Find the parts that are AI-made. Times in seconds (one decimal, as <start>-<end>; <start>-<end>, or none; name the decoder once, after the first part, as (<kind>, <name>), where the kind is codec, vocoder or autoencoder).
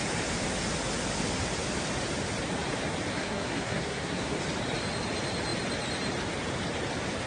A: 3.1-4.4 (codec, SNAC)